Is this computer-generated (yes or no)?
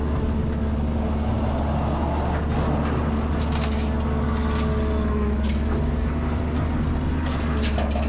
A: no